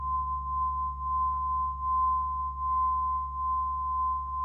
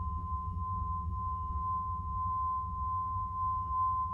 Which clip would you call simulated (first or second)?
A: second